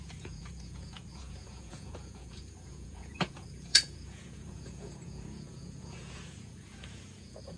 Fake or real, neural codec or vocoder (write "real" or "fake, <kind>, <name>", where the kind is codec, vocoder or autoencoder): fake, vocoder, Vocos